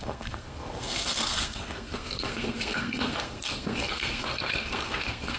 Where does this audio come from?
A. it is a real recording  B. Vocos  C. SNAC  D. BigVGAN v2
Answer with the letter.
C